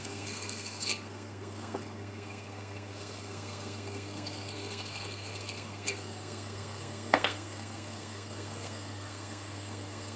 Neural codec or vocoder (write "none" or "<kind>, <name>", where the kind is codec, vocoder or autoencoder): codec, SNAC